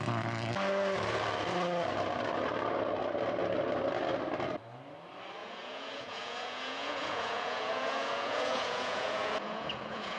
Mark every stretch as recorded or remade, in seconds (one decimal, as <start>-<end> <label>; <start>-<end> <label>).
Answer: 0.0-5.4 recorded; 5.4-10.2 remade